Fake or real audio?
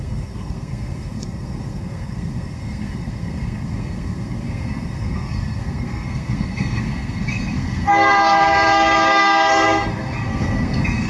fake